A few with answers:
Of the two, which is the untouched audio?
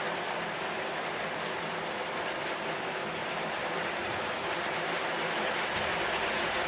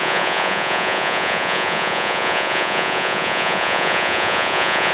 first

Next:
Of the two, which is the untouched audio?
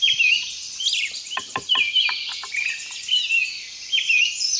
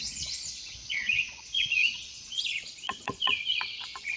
first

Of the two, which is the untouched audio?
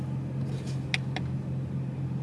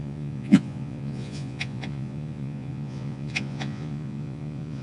first